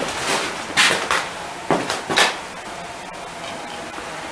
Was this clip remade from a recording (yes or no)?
no